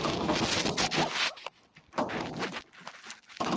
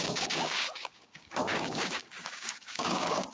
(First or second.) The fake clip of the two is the second